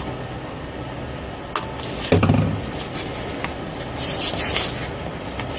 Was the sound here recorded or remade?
recorded